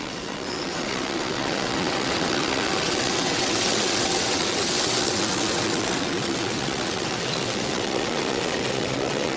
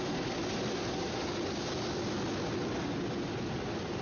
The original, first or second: second